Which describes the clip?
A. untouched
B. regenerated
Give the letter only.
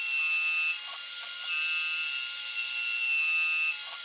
A